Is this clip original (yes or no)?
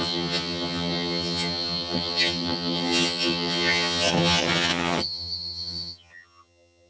no